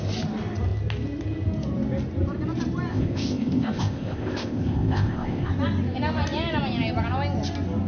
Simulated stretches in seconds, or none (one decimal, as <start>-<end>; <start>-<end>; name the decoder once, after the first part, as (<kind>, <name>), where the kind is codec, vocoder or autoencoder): 2.9-5.5 (codec, ZipCodec)